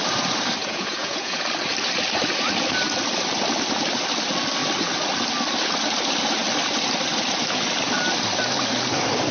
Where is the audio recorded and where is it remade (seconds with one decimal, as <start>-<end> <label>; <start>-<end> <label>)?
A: 0.0-0.6 recorded; 0.6-1.4 remade; 1.4-9.3 recorded